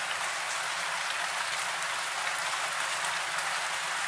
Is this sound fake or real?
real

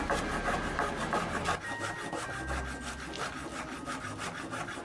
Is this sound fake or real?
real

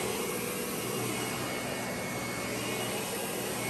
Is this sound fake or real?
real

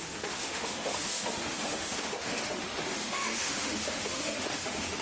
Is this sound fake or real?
fake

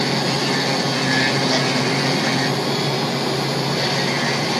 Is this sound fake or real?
real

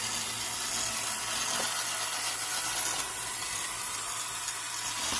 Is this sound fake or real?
real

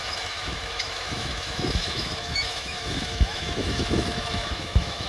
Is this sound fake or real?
fake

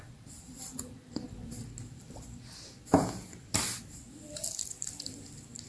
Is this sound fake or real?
real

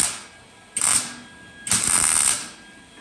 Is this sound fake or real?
real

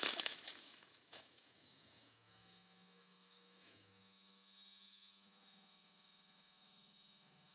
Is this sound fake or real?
fake